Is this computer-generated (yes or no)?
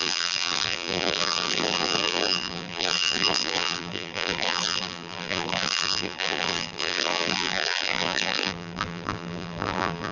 yes